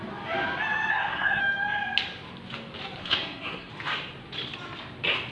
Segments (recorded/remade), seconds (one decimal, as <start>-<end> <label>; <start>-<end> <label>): 0.0-0.9 recorded; 0.9-1.4 remade; 1.4-3.0 recorded; 3.0-3.7 remade; 3.7-5.3 recorded